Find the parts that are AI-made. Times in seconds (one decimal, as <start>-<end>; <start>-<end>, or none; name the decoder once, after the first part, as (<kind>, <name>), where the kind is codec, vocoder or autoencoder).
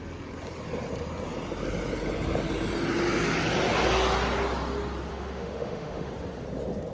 5.1-6.1 (autoencoder, DAC-VAE)